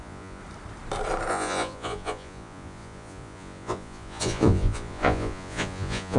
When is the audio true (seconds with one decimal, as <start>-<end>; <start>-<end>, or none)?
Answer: 0.4-1.3